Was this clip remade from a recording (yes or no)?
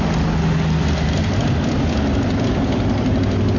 no